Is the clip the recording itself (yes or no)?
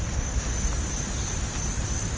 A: yes